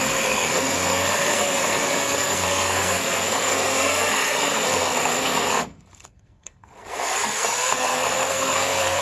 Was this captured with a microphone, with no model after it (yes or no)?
no